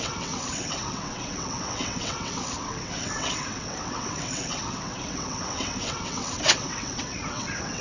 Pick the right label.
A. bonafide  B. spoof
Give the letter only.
B